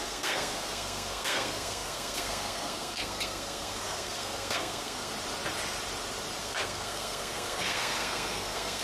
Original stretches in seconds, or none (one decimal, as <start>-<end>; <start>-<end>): 5.1-6.4

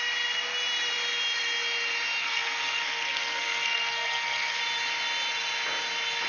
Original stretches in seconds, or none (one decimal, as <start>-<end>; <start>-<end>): 0.0-2.2; 4.6-6.3